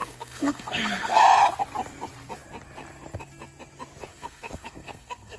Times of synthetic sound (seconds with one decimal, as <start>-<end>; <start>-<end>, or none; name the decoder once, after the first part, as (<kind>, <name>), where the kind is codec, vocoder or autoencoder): 0.0-1.2 (codec, SNAC); 4.1-5.4